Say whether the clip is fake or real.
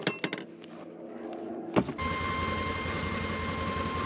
real